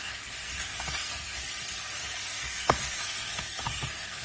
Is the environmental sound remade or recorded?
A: remade